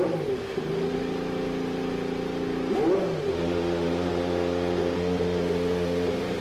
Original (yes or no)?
yes